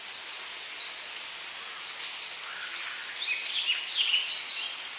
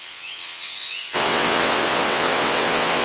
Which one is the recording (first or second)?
first